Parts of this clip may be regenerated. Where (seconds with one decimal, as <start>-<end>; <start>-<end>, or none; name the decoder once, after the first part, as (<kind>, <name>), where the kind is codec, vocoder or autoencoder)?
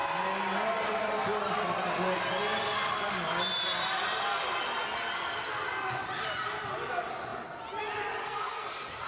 8.2-8.7 (codec, SNAC)